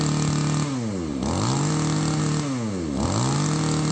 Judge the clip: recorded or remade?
recorded